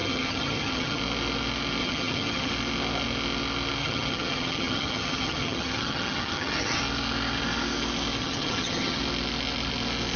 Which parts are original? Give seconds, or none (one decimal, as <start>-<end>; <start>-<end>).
1.0-1.8; 2.5-3.8; 6.8-8.2; 9.0-10.2